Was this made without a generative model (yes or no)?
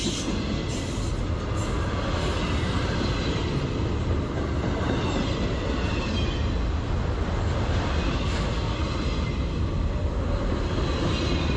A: yes